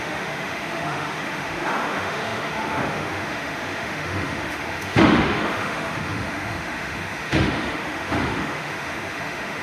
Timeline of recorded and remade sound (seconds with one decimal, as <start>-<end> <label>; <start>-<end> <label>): 0.0-9.6 remade